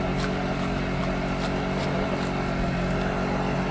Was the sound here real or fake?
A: real